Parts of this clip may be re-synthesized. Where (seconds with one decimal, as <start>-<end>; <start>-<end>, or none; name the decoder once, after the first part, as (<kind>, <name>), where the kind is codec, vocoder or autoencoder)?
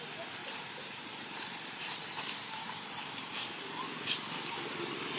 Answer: 0.4-3.5 (vocoder, BigVGAN v2)